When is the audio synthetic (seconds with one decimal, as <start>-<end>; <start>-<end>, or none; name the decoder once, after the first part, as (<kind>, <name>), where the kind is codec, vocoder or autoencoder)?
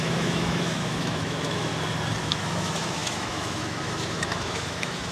0.0-1.7 (autoencoder, DAC-VAE); 2.2-5.1